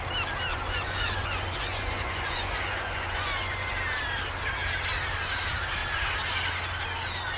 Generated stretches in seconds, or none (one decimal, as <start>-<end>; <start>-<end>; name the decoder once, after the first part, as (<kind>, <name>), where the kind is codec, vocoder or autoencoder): 0.5-3.7 (vocoder, Vocos)